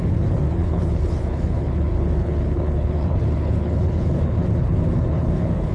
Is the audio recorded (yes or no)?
no